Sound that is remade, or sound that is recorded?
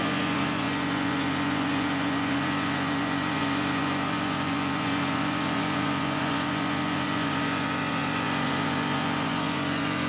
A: remade